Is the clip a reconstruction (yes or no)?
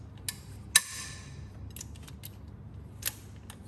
no